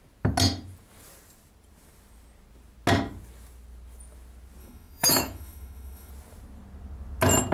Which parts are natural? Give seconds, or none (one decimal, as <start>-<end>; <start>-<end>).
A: 0.0-4.6; 6.1-7.5